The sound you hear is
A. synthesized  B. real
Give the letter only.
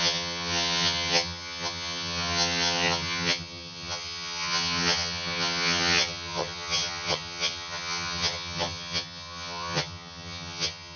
A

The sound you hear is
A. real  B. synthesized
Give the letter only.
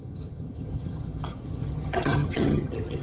B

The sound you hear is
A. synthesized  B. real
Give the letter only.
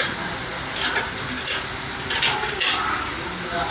B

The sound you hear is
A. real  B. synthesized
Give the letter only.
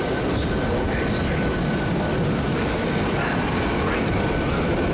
A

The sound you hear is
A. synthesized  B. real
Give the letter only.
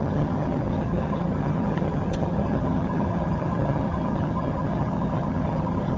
A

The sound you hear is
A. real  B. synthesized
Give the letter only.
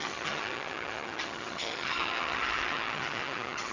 B